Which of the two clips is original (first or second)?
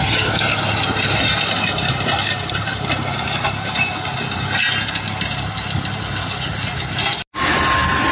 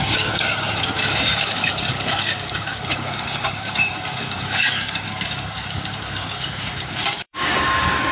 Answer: first